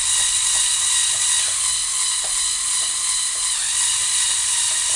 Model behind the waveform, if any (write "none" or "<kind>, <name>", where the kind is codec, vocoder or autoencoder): none